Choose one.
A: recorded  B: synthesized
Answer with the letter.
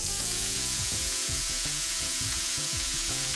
B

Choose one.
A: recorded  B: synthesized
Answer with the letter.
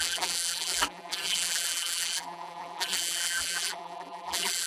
B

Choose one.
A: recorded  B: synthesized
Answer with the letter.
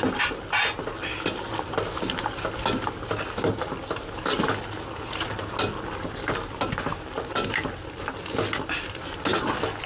A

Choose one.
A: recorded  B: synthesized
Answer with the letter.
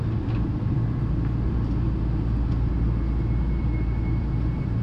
A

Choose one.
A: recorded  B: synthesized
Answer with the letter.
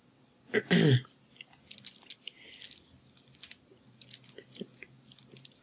A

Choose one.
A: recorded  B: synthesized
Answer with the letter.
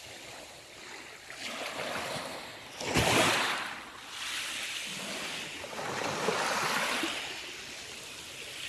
A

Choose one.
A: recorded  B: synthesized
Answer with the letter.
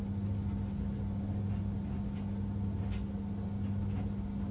A